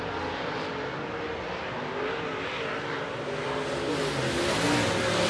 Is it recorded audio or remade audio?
recorded